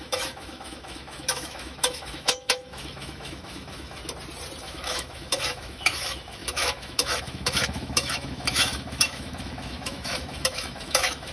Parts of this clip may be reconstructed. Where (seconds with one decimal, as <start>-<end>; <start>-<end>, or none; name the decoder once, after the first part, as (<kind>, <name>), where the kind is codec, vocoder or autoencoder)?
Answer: 0.0-4.0 (autoencoder, DAC-VAE); 4.6-11.3